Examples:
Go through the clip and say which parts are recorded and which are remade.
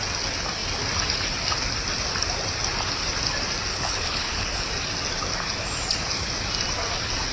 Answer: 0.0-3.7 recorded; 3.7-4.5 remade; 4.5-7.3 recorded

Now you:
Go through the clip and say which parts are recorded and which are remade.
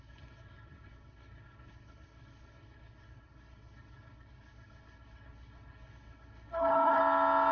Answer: 0.0-7.0 remade; 7.0-7.5 recorded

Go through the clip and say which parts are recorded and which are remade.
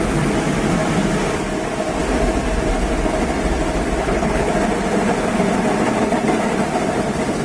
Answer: 0.0-4.0 recorded; 4.0-4.5 remade; 4.5-7.4 recorded